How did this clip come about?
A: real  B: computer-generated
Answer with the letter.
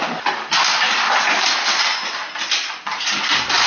A